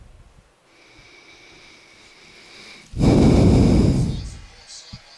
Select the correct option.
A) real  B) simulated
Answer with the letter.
A